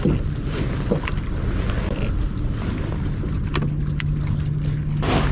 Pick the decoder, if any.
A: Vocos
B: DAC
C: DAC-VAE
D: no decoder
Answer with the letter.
D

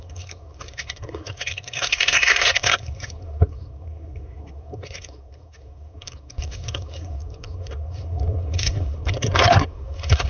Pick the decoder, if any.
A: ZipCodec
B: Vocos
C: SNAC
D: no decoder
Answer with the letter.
C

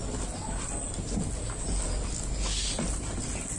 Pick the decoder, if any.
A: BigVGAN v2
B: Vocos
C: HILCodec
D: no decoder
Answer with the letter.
D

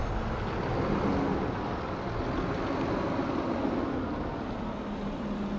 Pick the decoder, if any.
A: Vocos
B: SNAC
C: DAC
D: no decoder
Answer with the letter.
D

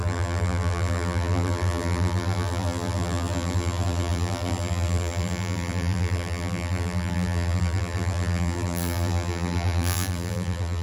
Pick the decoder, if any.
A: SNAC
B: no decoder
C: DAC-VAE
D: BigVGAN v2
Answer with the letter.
D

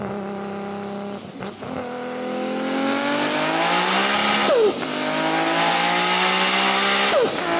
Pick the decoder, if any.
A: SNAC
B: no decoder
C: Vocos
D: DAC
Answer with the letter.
B